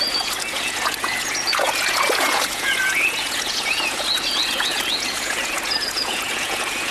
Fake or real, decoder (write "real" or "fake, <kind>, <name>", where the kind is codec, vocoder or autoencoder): fake, vocoder, Vocos